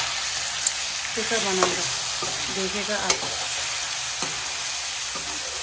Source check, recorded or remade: recorded